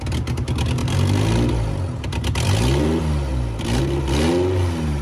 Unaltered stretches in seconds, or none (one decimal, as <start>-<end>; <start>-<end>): 0.0-5.0